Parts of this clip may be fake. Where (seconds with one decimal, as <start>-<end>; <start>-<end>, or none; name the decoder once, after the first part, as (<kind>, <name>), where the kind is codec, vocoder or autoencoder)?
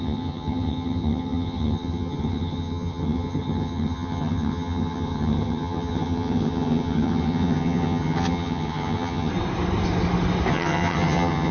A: 0.0-9.3 (vocoder, HiFi-GAN); 10.5-11.5